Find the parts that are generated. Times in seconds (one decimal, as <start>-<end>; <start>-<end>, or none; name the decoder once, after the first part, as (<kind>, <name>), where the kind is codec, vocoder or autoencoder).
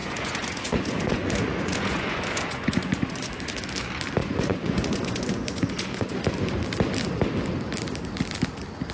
0.0-3.3 (vocoder, Vocos); 4.2-6.1